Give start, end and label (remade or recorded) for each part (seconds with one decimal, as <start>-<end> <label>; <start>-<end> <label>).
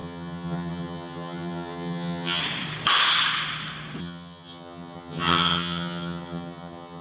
0.0-2.4 remade; 2.4-4.0 recorded; 4.0-7.0 remade